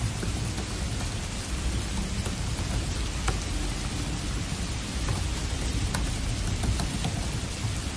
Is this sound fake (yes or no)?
no